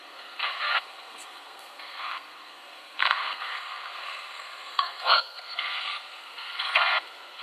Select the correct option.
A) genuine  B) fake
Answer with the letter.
B